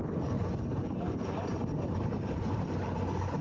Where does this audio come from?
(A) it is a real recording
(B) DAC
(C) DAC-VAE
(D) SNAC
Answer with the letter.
A